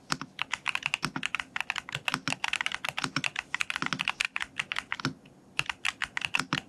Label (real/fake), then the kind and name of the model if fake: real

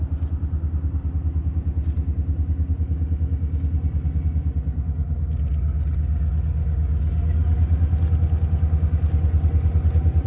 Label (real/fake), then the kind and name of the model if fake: real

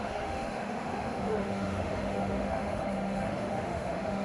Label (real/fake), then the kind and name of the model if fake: fake, autoencoder, DAC-VAE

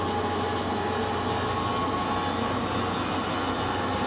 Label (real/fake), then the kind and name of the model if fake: real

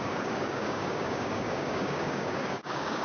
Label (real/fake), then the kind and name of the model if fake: fake, codec, DAC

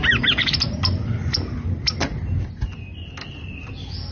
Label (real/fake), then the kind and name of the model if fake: real